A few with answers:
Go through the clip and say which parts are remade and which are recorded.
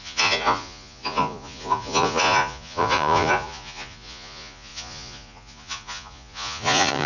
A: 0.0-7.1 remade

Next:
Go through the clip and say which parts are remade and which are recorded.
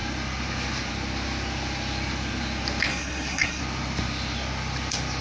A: 0.0-2.9 recorded; 2.9-3.6 remade; 3.6-5.2 recorded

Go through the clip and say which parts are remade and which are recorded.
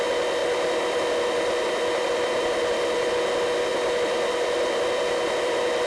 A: 0.0-0.4 recorded; 0.4-3.1 remade; 3.1-3.7 recorded; 3.7-5.9 remade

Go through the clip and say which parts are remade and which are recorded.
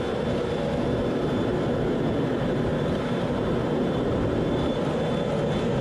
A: 0.0-2.7 recorded; 2.7-4.9 remade; 4.9-5.8 recorded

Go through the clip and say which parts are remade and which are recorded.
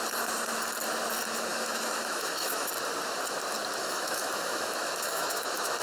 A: 0.0-1.5 recorded; 1.5-2.7 remade; 2.7-3.8 recorded; 3.8-5.8 remade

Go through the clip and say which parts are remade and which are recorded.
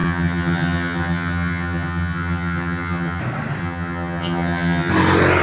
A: 0.0-3.2 remade; 3.2-3.6 recorded; 3.6-4.9 remade; 4.9-5.4 recorded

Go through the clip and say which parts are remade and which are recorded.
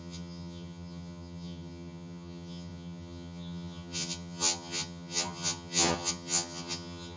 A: 0.0-7.2 remade